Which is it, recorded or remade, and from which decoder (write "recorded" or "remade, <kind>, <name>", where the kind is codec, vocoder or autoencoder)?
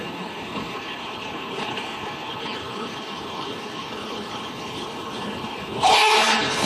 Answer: remade, codec, HILCodec